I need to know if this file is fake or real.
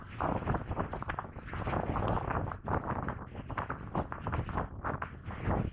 real